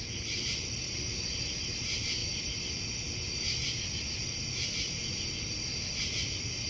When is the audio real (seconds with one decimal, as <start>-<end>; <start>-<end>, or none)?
2.2-4.3; 5.0-6.0

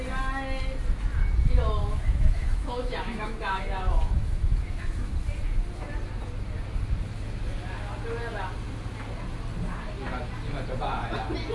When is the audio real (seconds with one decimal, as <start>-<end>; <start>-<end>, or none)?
0.0-1.8; 5.1-11.5

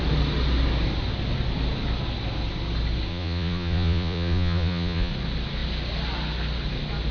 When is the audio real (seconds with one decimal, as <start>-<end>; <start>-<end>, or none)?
0.0-3.1; 5.1-7.1

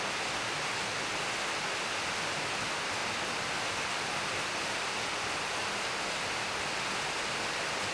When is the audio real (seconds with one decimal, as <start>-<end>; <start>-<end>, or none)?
0.0-7.9

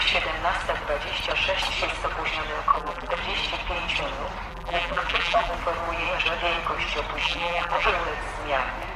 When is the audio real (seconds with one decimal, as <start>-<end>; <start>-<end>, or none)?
0.0-2.7; 3.2-4.5; 5.5-7.2; 7.9-9.0

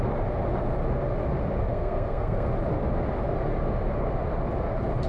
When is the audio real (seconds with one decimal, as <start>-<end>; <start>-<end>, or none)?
0.0-1.7; 2.5-5.1

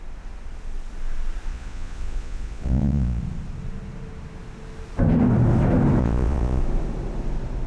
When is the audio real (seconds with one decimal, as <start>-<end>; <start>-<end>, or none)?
0.0-1.5; 3.2-6.0; 6.6-7.7